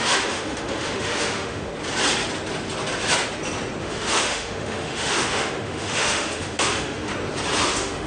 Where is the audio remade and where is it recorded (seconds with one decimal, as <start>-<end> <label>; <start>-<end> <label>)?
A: 0.0-1.7 remade; 1.7-3.8 recorded; 3.8-7.1 remade; 7.1-7.6 recorded; 7.6-8.1 remade